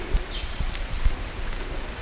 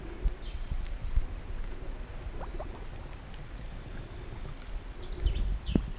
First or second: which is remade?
first